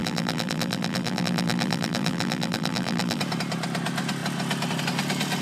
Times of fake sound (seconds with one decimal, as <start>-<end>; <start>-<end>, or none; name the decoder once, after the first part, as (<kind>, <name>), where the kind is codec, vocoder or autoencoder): 0.0-3.2 (vocoder, BigVGAN v2)